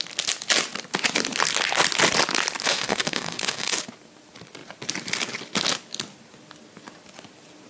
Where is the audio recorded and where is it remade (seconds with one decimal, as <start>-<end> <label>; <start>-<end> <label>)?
0.0-2.6 recorded; 2.6-3.8 remade; 3.8-7.7 recorded